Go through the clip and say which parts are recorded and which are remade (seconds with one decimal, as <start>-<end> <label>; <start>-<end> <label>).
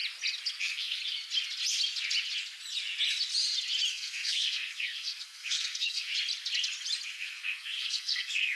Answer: 0.0-0.6 recorded; 0.6-1.0 remade; 1.0-3.9 recorded; 3.9-6.1 remade; 6.1-7.1 recorded; 7.1-8.6 remade